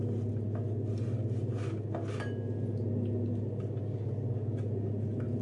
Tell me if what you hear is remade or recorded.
recorded